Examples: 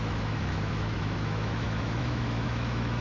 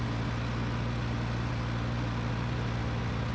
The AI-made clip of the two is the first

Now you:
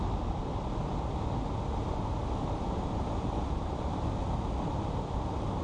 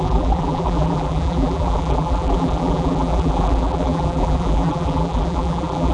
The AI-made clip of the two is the second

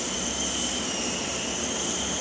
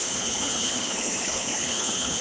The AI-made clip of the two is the second